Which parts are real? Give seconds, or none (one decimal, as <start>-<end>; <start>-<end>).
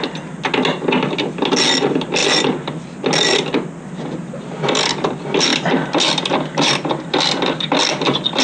0.0-8.4